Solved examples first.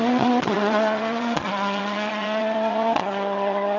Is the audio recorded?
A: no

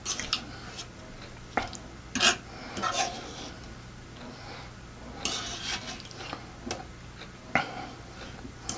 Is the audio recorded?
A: yes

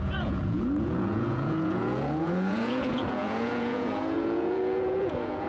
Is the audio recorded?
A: no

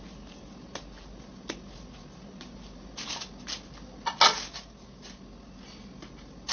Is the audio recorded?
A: yes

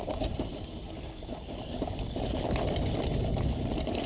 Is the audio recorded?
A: yes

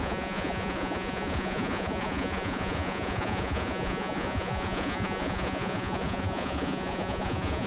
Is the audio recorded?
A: no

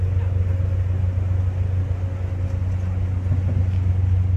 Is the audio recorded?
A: yes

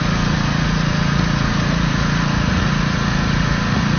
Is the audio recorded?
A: no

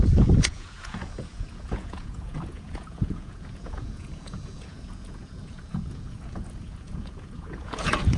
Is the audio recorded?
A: no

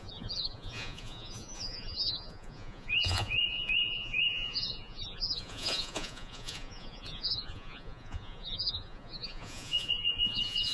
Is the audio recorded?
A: no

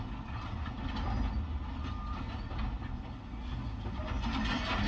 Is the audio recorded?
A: yes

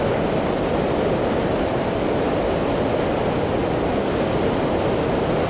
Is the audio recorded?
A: yes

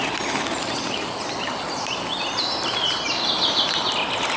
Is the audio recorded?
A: yes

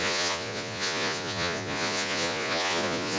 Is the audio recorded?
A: no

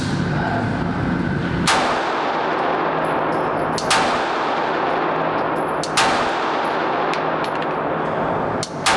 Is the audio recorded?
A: yes